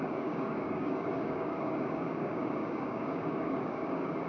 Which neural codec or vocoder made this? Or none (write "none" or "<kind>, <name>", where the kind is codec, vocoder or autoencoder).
codec, DAC